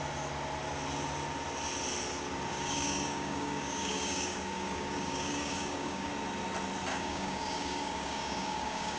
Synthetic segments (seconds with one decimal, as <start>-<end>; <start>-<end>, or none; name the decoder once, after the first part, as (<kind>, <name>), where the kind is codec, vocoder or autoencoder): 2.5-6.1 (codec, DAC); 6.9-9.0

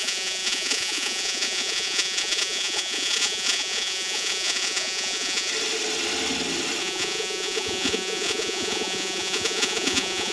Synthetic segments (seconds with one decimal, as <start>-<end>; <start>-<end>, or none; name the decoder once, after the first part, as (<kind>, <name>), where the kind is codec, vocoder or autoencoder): 0.0-5.5 (vocoder, Vocos); 6.8-10.3

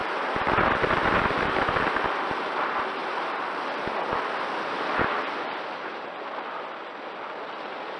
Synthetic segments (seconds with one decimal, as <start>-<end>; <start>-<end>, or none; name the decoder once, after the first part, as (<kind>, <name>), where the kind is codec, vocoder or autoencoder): none

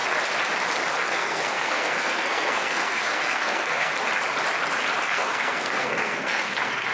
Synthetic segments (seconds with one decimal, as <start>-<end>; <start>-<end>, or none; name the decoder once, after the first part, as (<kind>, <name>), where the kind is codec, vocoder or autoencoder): 0.9-3.9 (codec, SNAC); 5.0-6.9

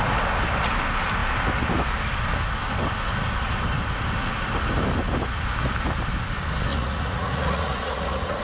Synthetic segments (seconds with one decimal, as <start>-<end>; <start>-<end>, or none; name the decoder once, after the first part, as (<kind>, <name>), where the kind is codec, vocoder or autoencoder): 6.7-8.4 (vocoder, Vocos)